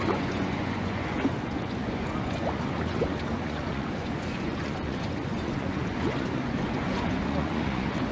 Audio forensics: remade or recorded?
remade